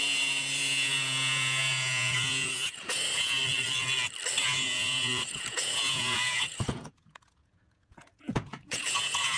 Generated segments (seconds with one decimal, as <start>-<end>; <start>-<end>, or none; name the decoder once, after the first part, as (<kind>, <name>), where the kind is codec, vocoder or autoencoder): 0.0-3.4 (vocoder, Vocos); 4.4-9.4